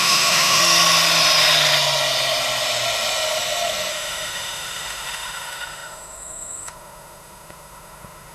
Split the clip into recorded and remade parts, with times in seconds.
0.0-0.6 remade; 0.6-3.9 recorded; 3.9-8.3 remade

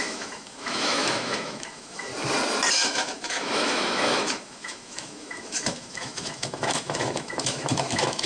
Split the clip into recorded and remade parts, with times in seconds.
0.0-2.1 remade; 2.1-2.7 recorded; 2.7-8.3 remade

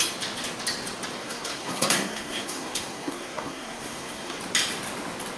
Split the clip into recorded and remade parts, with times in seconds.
0.0-1.2 recorded; 1.2-4.4 remade; 4.4-5.4 recorded

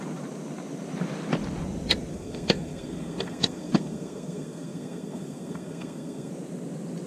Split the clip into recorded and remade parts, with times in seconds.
0.0-2.1 recorded; 2.1-6.3 remade; 6.3-7.1 recorded